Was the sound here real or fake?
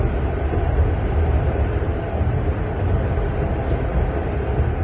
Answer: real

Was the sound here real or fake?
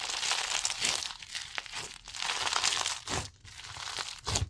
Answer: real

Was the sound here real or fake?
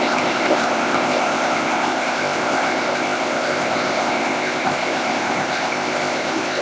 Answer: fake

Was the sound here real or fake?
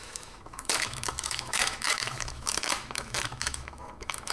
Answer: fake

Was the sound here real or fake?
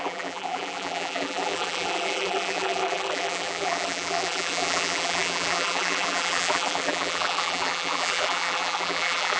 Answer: fake